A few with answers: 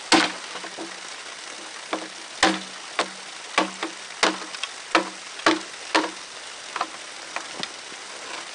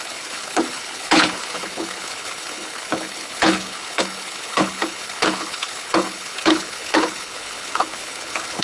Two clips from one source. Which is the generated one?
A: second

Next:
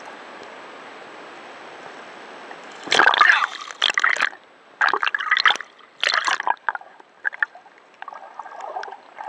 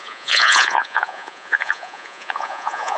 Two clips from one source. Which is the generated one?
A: second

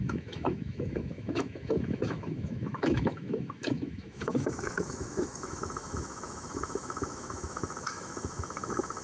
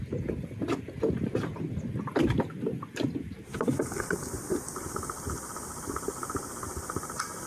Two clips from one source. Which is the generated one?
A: first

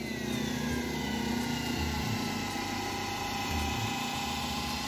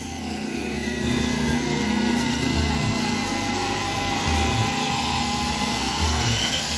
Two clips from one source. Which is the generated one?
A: second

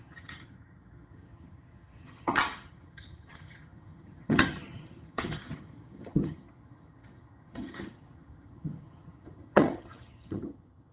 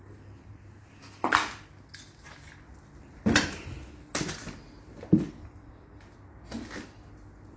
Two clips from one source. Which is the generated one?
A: first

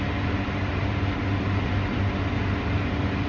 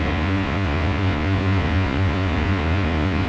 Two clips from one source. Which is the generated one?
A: second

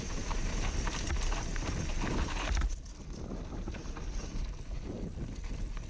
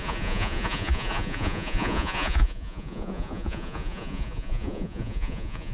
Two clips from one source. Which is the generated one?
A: second